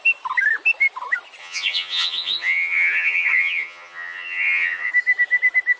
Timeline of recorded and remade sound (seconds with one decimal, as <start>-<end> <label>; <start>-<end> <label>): 0.0-1.4 recorded; 1.4-4.9 remade; 4.9-5.8 recorded